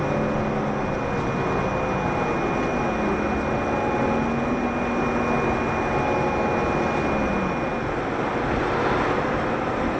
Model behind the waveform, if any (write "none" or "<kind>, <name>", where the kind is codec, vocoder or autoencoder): none